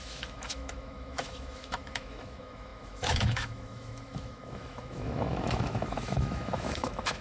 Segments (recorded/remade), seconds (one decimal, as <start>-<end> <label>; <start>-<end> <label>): 0.0-7.2 remade